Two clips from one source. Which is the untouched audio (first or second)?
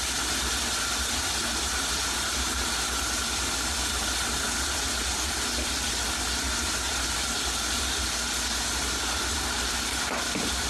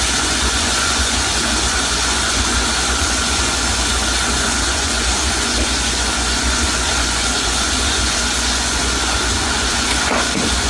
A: first